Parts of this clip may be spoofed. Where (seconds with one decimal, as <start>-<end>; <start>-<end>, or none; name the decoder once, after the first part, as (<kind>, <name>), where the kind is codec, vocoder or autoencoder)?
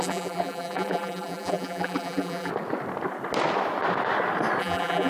0.0-2.5 (vocoder, BigVGAN v2); 4.6-5.1